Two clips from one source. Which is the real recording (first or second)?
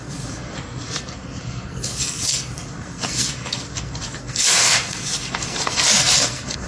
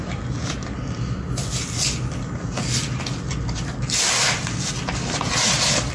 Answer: second